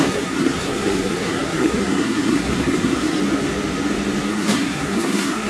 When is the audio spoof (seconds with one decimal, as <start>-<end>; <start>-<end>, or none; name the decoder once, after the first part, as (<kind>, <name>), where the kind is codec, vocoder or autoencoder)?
0.0-3.2 (codec, SNAC); 4.3-5.5

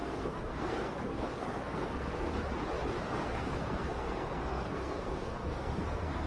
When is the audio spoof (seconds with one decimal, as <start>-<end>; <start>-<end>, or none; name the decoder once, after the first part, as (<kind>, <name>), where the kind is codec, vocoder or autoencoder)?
0.0-2.3 (codec, SNAC); 3.0-6.3

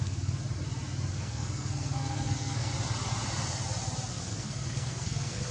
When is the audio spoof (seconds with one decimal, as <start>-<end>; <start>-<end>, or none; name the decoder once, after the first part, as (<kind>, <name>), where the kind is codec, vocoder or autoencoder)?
0.0-0.4 (codec, SNAC); 1.1-2.7; 4.1-5.5

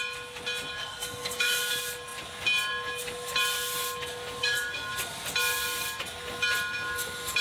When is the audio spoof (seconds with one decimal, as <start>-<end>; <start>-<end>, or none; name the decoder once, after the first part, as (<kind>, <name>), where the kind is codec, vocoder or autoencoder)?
0.8-1.6 (codec, SNAC); 4.4-4.9

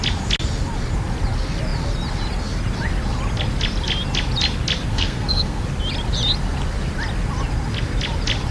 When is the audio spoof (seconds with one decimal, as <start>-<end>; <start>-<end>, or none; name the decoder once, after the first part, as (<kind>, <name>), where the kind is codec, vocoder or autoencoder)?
4.9-5.6 (codec, SNAC)

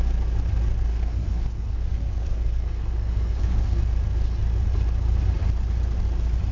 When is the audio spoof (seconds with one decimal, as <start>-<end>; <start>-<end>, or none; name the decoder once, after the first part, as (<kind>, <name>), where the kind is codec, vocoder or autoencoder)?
0.9-3.8 (codec, SNAC)

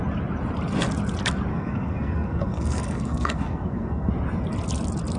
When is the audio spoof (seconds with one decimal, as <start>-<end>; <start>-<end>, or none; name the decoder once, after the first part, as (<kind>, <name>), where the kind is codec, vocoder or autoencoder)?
1.5-4.1 (codec, SNAC)

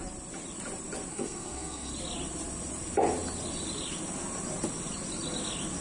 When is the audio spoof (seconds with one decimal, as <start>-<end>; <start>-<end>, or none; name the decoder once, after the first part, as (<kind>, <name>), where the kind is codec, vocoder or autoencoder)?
1.1-1.9 (codec, SNAC)